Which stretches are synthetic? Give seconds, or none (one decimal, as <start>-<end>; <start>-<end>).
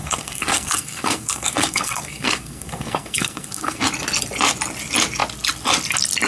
0.0-3.8